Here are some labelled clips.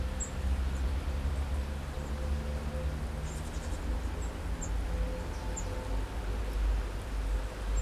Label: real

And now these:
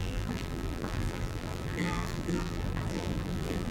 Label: fake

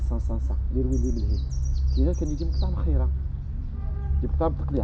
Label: real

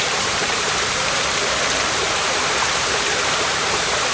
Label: fake